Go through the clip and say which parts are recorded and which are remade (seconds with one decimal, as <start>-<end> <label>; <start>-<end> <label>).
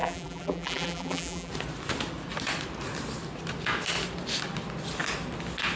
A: 0.0-1.5 remade; 1.5-5.8 recorded